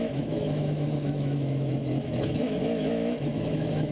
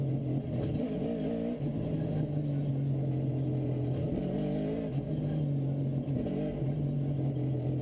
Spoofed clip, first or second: first